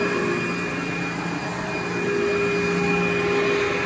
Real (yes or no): yes